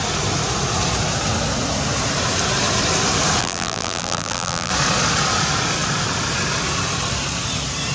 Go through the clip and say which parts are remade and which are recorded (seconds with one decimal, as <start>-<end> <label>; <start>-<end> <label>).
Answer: 0.0-3.4 recorded; 3.4-4.7 remade; 4.7-7.9 recorded